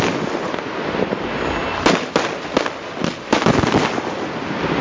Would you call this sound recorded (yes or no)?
yes